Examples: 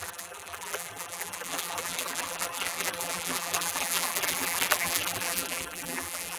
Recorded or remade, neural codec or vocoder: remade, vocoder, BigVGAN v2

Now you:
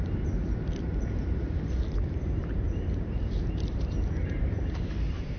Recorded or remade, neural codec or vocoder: remade, vocoder, BigVGAN v2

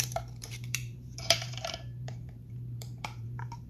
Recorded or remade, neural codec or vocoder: remade, vocoder, BigVGAN v2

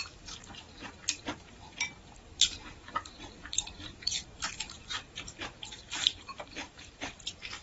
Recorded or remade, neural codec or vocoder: remade, vocoder, BigVGAN v2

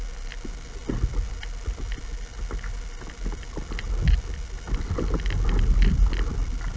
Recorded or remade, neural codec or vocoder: recorded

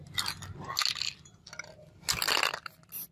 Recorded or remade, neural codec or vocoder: recorded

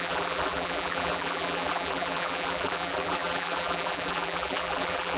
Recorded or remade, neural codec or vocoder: remade, vocoder, BigVGAN v2